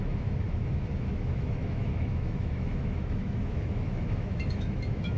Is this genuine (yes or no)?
no